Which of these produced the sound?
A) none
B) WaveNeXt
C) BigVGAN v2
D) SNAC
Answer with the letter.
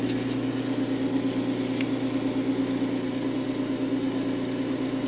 A